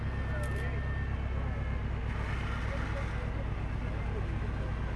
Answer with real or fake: real